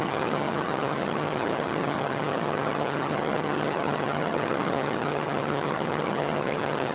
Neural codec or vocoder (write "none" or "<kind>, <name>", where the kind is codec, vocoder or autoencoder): vocoder, HiFi-GAN